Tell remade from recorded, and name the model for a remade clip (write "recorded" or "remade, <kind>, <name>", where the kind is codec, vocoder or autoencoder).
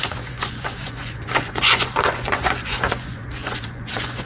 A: remade, vocoder, Vocos